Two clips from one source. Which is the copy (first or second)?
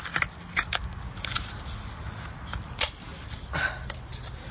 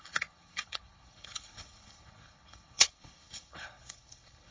second